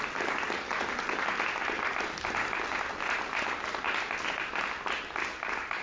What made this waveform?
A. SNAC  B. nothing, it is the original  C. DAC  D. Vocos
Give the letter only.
B